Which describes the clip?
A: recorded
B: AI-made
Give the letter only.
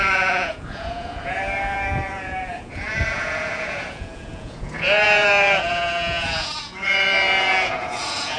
B